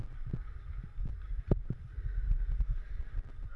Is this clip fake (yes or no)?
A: no